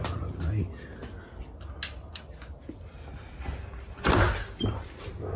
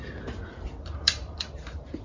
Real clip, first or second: first